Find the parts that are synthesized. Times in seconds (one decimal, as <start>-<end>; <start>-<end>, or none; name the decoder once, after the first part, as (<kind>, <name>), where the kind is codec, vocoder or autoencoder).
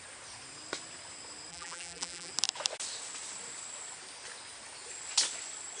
1.5-2.3 (vocoder, BigVGAN v2)